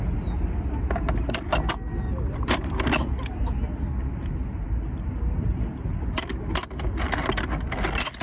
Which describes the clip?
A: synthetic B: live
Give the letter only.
B